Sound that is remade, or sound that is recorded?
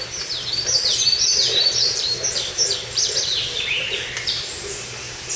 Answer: remade